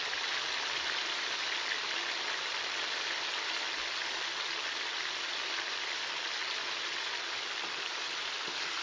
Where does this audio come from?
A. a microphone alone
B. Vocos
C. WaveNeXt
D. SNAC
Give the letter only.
A